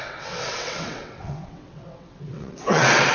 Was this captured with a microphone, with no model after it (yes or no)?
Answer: no